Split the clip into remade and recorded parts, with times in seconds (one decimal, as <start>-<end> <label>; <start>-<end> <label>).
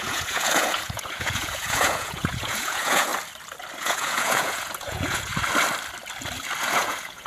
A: 0.0-3.1 remade; 3.1-3.8 recorded; 3.8-5.3 remade; 5.3-6.6 recorded; 6.6-7.3 remade